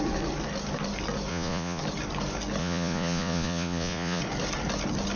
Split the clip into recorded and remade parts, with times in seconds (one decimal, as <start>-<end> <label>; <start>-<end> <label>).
0.0-1.3 recorded; 1.3-1.8 remade; 1.8-2.6 recorded; 2.6-4.2 remade; 4.2-5.2 recorded